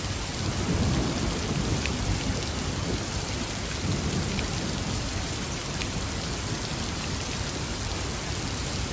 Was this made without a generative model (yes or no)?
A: yes